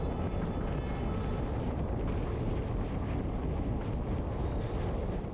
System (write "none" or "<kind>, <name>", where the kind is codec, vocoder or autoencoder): none